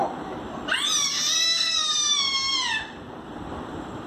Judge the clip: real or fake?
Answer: real